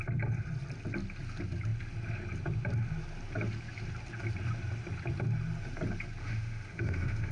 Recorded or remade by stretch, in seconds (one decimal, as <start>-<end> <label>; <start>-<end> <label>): 0.0-6.2 recorded; 6.2-7.3 remade